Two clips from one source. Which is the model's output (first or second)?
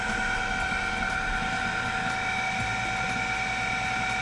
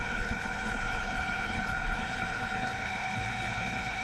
second